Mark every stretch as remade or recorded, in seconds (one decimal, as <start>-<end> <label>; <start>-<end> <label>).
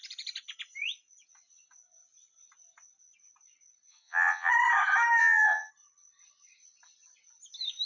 0.0-3.9 recorded; 3.9-4.5 remade; 4.5-5.2 recorded; 5.2-5.7 remade; 5.7-7.9 recorded